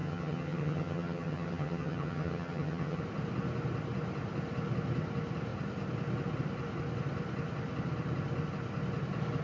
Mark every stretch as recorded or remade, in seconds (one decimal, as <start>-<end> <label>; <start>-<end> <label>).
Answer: 0.0-3.0 remade; 3.0-9.4 recorded